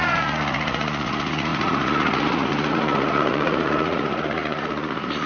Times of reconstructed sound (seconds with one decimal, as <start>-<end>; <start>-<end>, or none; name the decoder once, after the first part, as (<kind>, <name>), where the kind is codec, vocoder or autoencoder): 0.0-5.3 (vocoder, Vocos)